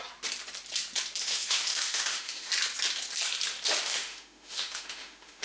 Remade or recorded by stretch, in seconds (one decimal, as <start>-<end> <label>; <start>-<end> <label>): 0.0-1.2 recorded; 1.2-2.5 remade; 2.5-3.8 recorded; 3.8-5.4 remade